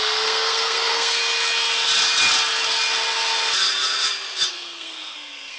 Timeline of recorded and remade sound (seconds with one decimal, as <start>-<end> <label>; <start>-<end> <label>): 0.0-1.2 remade; 1.2-4.5 recorded; 4.5-5.6 remade